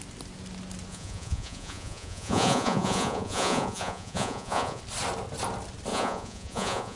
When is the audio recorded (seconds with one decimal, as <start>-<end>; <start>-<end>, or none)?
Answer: 0.0-0.9; 4.8-5.9